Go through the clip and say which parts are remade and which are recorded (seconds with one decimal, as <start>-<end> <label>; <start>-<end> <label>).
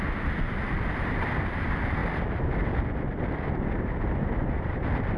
0.0-2.0 recorded; 2.0-5.2 remade